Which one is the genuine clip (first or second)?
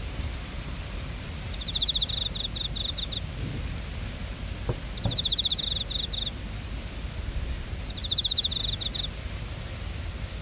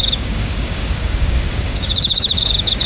first